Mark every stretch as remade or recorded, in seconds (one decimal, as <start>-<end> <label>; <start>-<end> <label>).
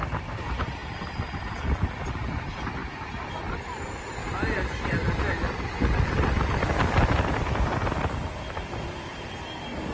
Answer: 0.0-0.8 recorded; 0.8-1.8 remade; 1.8-4.2 recorded; 4.2-9.3 remade; 9.3-9.9 recorded